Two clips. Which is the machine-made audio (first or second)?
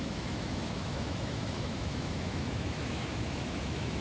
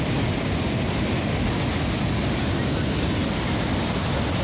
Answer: first